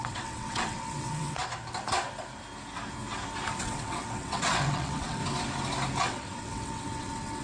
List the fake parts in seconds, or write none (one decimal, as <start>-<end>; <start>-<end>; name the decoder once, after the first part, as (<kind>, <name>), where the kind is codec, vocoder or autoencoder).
0.0-1.4 (vocoder, WaveNeXt); 3.6-5.2; 6.0-7.4